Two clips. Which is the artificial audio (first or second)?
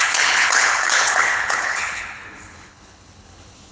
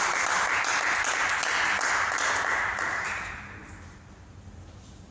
first